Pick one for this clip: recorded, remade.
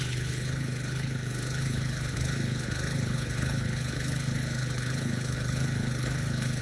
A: remade